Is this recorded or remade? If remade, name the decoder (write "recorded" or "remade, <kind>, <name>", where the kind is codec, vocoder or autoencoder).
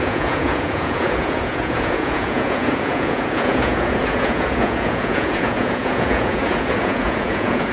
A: remade, vocoder, Vocos